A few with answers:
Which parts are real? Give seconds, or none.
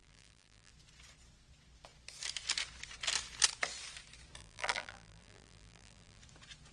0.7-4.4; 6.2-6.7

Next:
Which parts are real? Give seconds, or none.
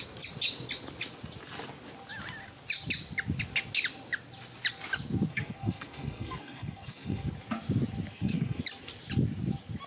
0.0-5.3; 7.3-8.1; 8.6-9.9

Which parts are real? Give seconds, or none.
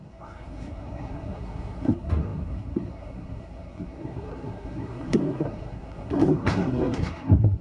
none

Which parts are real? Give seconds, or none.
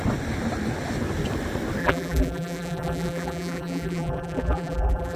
0.0-1.8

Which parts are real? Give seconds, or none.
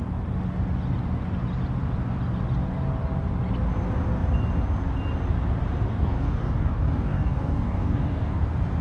0.0-5.9; 8.4-8.8